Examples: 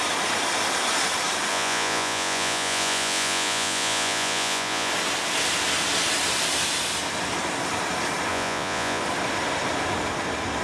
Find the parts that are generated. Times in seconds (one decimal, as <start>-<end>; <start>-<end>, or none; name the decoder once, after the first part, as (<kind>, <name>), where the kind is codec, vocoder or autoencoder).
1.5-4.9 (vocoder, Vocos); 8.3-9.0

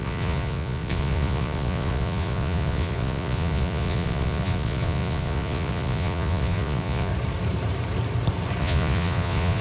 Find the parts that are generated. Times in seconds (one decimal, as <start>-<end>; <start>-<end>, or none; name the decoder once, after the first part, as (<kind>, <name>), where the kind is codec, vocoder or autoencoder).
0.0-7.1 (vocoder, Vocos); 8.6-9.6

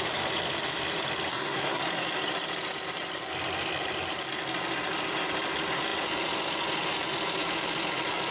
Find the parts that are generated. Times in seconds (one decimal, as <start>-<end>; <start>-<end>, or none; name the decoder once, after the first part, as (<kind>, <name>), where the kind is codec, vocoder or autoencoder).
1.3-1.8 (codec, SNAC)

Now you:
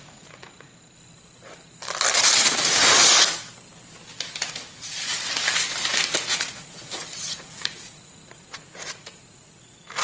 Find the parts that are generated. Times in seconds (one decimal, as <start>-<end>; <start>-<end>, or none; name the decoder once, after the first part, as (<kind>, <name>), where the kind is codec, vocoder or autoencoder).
0.0-0.7 (vocoder, Vocos); 4.5-5.1; 6.3-10.0